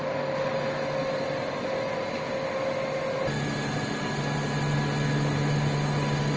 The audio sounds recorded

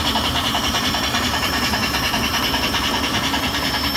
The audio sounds remade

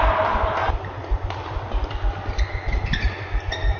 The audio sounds recorded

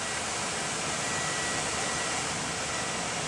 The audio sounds recorded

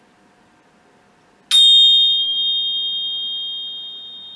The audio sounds recorded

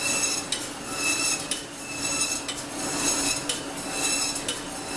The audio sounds recorded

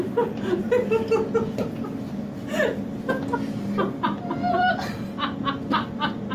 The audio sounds recorded